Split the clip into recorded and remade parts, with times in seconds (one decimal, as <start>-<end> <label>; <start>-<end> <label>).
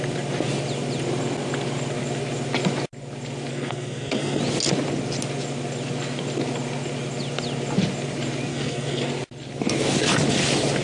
0.0-3.5 recorded; 3.5-4.4 remade; 4.4-8.5 recorded; 8.5-9.1 remade; 9.1-10.8 recorded